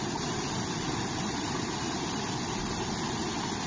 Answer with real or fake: fake